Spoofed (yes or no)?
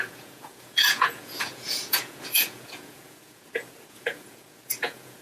yes